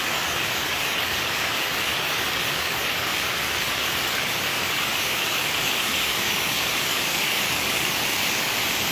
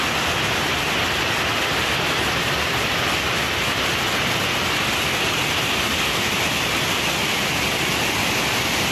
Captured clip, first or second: second